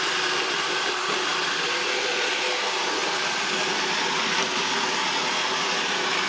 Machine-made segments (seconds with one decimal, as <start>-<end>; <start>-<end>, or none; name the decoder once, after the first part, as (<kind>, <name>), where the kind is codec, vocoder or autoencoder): none